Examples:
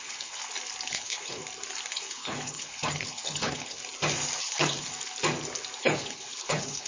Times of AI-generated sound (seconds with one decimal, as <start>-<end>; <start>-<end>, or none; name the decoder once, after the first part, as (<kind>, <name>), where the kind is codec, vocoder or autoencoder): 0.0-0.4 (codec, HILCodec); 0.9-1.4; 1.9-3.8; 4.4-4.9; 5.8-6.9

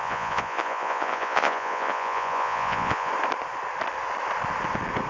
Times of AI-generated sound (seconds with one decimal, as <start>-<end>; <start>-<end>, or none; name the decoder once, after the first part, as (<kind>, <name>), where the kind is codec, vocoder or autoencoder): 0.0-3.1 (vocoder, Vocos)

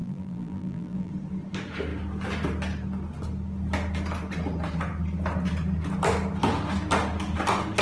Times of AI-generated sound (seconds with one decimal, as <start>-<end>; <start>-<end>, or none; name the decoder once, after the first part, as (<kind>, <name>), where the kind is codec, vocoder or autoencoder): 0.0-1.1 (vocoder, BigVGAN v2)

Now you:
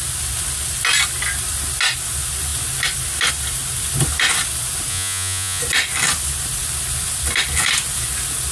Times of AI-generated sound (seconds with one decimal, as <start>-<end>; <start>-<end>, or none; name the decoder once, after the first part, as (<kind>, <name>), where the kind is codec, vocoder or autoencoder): 4.9-5.6 (vocoder, Vocos)